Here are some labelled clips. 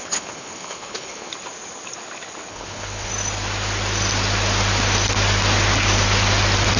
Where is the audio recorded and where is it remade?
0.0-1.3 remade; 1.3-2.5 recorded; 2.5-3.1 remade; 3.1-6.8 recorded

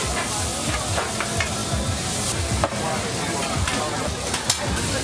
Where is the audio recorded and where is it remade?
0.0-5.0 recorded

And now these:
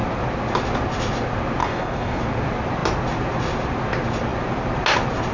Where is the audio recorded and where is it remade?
0.0-1.6 recorded; 1.6-2.2 remade; 2.2-5.3 recorded

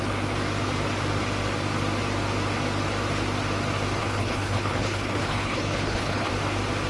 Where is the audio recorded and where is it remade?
0.0-4.0 recorded; 4.0-6.3 remade; 6.3-6.9 recorded